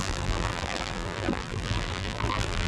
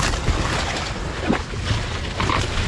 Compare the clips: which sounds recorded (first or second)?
second